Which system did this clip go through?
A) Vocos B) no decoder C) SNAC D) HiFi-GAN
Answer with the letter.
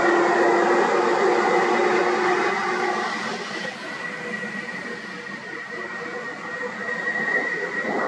B